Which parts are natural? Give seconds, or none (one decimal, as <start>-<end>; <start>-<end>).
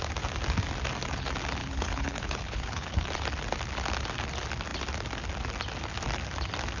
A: 0.0-1.6; 3.1-6.8